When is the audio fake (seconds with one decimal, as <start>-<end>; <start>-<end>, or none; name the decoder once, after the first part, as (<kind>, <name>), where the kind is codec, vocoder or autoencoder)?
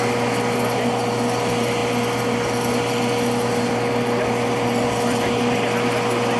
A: none